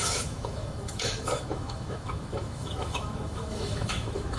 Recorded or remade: remade